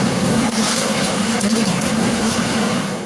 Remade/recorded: remade